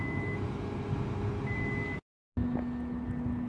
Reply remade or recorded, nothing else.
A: recorded